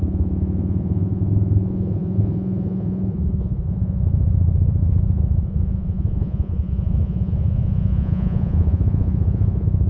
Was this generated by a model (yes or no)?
yes